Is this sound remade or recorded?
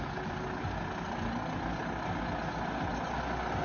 recorded